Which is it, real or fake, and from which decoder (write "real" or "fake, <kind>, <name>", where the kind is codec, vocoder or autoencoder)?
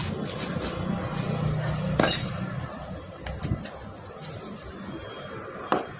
real